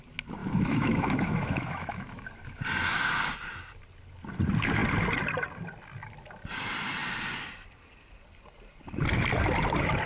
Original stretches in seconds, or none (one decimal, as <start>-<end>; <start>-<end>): 0.0-0.4; 2.3-10.1